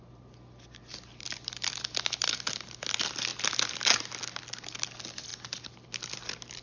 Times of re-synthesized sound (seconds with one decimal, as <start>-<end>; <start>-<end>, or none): none